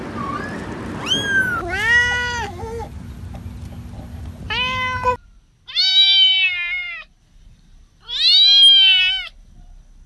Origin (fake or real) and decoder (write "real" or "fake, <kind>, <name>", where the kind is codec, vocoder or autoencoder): real